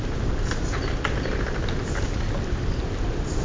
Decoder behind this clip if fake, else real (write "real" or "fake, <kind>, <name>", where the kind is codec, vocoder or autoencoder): real